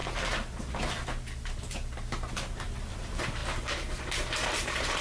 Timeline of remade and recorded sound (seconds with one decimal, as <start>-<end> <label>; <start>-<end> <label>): 0.0-3.0 recorded; 3.0-3.4 remade; 3.4-4.0 recorded; 4.0-5.0 remade